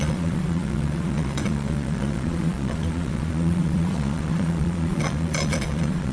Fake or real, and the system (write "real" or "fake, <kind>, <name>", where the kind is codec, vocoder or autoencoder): fake, vocoder, Vocos